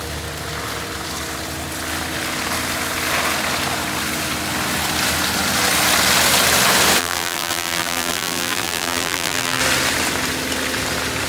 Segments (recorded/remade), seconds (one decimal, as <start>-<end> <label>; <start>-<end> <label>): 0.0-7.0 recorded; 7.0-9.6 remade; 9.6-11.3 recorded